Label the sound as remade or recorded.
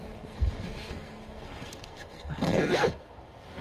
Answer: remade